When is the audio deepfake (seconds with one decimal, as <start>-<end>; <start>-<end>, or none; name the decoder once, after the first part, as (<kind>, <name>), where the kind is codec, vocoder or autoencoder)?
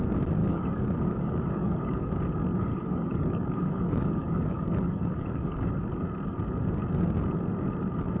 0.4-2.1 (codec, DAC); 2.7-5.7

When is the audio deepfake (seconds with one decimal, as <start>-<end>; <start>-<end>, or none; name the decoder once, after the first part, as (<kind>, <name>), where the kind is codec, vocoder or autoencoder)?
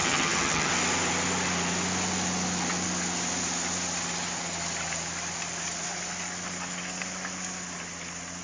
0.0-0.7 (vocoder, HiFi-GAN)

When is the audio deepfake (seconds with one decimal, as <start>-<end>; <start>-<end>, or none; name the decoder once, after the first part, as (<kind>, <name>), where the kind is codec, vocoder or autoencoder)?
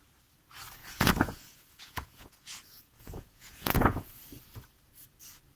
0.8-4.2 (vocoder, Vocos)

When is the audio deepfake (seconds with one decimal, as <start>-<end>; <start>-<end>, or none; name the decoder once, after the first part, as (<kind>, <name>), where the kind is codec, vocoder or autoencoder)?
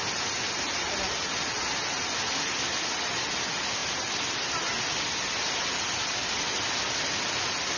none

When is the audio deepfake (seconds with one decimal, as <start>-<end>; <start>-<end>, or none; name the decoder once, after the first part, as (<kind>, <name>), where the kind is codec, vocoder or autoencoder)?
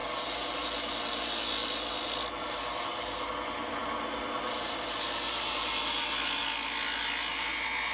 none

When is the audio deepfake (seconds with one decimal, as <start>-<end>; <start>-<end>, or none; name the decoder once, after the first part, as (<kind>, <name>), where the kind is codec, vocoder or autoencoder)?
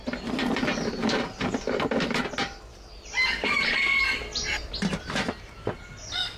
1.0-2.2 (vocoder, BigVGAN v2); 4.6-5.6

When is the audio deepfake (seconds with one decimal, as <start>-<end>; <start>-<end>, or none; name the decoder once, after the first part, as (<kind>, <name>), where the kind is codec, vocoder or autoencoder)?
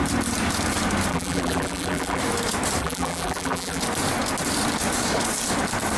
1.1-2.2 (vocoder, BigVGAN v2); 2.8-3.8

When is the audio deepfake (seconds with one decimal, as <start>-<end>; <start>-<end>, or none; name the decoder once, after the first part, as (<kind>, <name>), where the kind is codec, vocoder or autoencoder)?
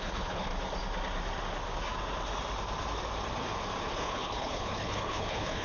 0.0-0.5 (codec, HILCodec); 3.9-5.6